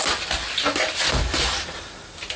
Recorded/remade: recorded